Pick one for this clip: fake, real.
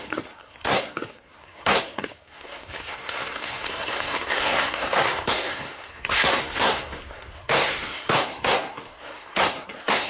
fake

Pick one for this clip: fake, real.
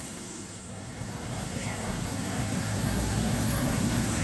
fake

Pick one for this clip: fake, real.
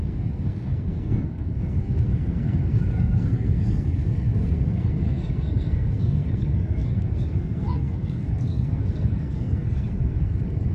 fake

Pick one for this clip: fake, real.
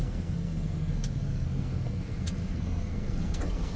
fake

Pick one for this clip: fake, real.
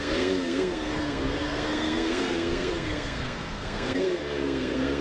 fake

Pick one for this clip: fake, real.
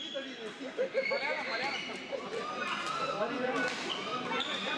real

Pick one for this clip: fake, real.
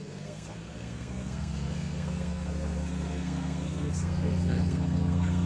fake